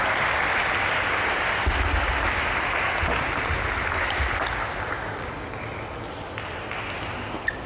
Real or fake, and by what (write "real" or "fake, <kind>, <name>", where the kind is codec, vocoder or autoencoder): real